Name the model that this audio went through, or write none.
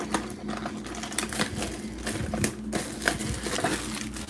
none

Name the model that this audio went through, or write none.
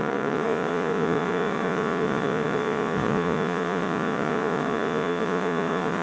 vocoder, Vocos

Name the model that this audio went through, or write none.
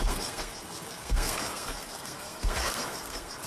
codec, SNAC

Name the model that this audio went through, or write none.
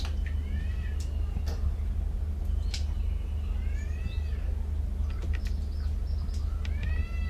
none